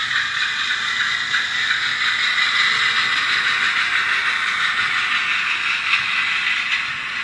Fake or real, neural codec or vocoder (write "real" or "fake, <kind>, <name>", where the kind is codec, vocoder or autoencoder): real